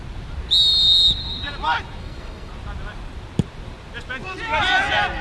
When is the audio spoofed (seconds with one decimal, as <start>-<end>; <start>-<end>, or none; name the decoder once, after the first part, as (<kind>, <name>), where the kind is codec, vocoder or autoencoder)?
2.0-2.5 (codec, SNAC)